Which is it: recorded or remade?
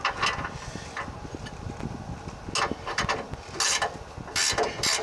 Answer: recorded